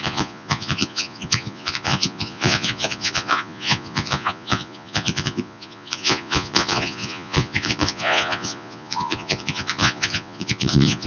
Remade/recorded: remade